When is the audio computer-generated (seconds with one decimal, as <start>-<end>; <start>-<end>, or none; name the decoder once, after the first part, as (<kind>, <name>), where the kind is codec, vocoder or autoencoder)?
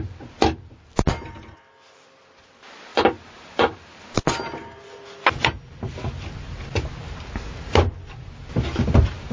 2.9-4.6 (vocoder, BigVGAN v2)